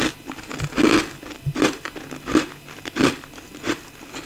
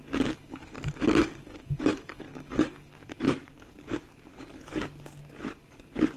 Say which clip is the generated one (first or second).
second